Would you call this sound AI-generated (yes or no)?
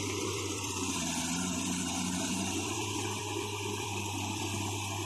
yes